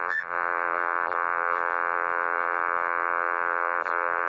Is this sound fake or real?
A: fake